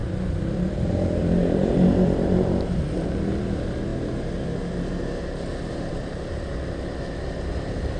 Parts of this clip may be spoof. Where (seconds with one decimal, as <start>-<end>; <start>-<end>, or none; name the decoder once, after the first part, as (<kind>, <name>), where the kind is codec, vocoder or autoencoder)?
0.9-3.9 (vocoder, BigVGAN v2); 5.9-8.0